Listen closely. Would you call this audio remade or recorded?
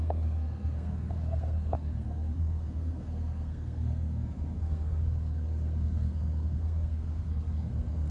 remade